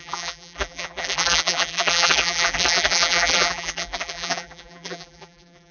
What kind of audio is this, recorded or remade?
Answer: remade